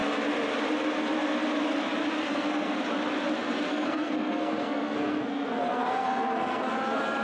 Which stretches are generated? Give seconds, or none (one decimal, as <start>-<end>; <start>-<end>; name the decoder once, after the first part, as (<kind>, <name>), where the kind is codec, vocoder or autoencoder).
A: 2.3-2.8 (codec, SNAC); 3.7-6.7